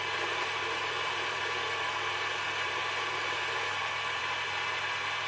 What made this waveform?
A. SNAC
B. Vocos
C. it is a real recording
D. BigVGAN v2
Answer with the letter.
D